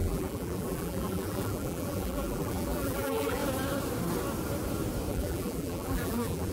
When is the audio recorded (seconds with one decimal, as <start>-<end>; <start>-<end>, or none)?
3.4-5.1